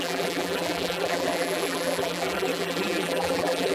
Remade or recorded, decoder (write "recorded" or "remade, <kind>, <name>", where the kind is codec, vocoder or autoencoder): remade, vocoder, BigVGAN v2